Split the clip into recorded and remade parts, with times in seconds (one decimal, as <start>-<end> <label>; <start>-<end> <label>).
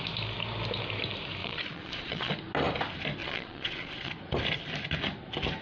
0.0-1.4 recorded; 1.4-2.3 remade; 2.3-3.2 recorded; 3.2-4.1 remade; 4.1-5.6 recorded